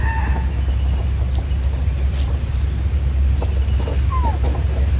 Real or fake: real